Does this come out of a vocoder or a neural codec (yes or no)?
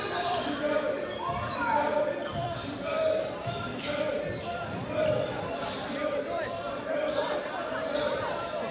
yes